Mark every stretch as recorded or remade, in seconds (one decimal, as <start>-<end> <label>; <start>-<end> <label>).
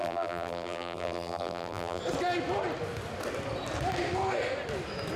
0.0-2.0 remade; 2.0-5.2 recorded